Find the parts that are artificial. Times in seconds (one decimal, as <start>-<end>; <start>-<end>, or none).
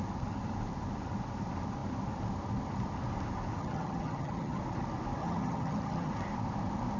3.6-4.6; 5.2-6.1